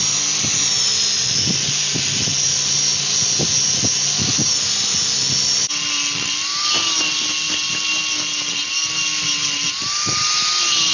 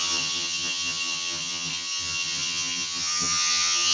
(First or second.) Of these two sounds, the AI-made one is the second